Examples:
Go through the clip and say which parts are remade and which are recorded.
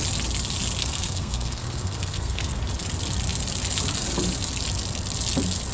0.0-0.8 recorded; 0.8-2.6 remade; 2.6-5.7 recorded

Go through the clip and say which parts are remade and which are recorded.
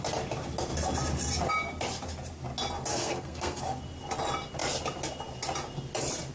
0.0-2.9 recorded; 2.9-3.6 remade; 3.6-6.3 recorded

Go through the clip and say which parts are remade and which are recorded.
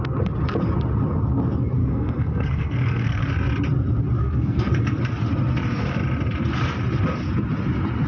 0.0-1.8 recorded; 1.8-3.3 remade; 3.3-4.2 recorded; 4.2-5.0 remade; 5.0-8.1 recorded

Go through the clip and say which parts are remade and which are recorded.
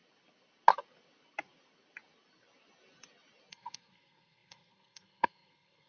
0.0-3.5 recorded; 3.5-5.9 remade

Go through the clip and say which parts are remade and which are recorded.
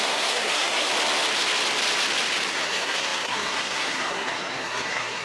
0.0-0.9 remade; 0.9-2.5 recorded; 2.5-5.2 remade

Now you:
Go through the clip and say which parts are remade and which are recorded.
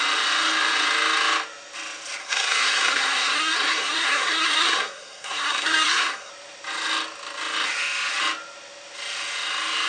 0.0-2.2 recorded; 2.2-6.3 remade; 6.3-9.9 recorded